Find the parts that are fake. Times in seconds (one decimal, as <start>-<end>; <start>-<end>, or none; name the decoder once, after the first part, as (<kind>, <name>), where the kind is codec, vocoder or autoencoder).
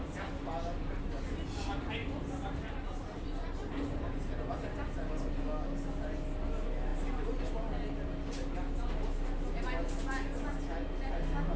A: none